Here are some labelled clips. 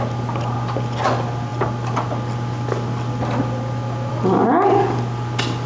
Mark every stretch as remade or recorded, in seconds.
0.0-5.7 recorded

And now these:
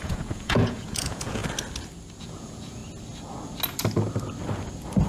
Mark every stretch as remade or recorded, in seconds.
0.0-1.4 remade; 1.4-2.2 recorded; 2.2-2.8 remade; 2.8-5.1 recorded

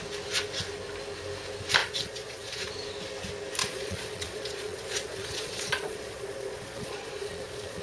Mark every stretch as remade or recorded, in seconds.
0.0-1.8 recorded; 1.8-2.7 remade; 2.7-3.6 recorded; 3.6-7.8 remade